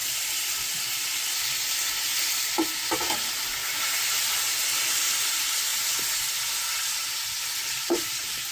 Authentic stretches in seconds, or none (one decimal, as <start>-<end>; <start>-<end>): 2.1-2.8; 3.6-4.4; 5.7-7.4